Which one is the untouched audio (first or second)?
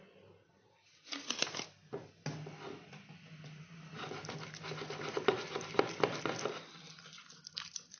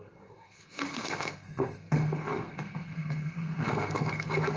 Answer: first